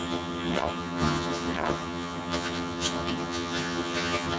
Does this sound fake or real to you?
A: fake